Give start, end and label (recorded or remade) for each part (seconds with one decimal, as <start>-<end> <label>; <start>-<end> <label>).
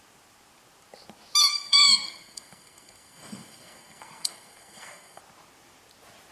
0.0-1.4 recorded; 1.4-5.2 remade; 5.2-6.3 recorded